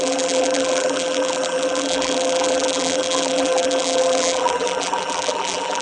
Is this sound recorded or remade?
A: remade